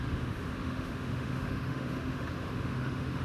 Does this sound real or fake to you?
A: fake